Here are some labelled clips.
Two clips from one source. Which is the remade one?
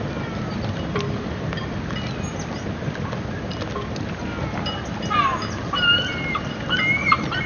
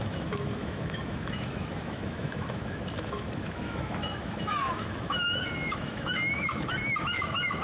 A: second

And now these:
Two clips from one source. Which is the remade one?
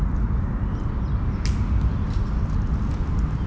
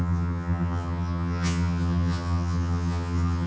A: second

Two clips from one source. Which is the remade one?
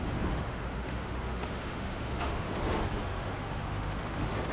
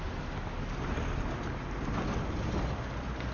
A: first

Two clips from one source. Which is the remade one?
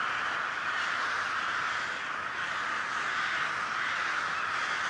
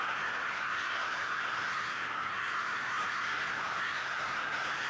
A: second